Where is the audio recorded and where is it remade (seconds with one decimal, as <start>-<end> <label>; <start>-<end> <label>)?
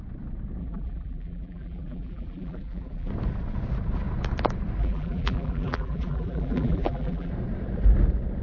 0.0-0.6 recorded; 0.6-3.1 remade; 3.1-4.8 recorded; 4.8-7.3 remade; 7.3-8.4 recorded